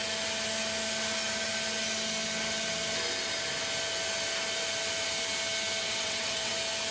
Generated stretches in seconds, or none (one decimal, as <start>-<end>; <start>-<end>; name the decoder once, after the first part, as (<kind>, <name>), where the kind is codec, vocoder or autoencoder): 5.8-6.5 (vocoder, WaveNeXt)